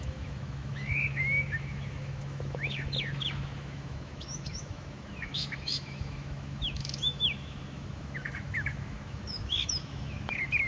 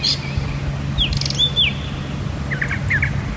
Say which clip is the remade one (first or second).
first